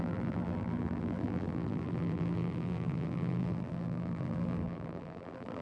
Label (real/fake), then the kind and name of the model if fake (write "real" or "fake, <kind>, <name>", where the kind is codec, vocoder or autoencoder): fake, vocoder, BigVGAN v2